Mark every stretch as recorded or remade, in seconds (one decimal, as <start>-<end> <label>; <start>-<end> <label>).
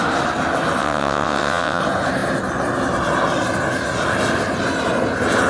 0.0-0.8 recorded; 0.8-1.8 remade; 1.8-5.5 recorded